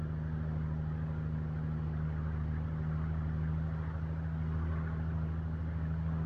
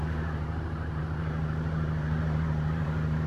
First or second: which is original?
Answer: first